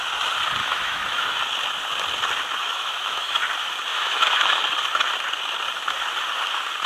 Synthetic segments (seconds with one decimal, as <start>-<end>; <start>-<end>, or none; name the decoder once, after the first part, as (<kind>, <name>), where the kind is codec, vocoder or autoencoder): 0.6-1.3 (autoencoder, DAC-VAE); 2.6-3.4; 3.9-4.6